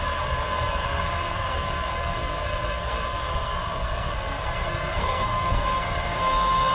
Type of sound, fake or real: fake